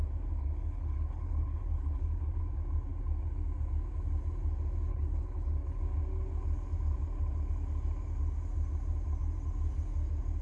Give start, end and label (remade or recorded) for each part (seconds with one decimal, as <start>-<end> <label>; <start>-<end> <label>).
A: 0.0-0.4 recorded; 0.4-2.4 remade; 2.4-4.9 recorded; 4.9-5.8 remade; 5.8-10.4 recorded